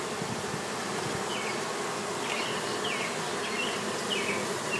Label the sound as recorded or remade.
recorded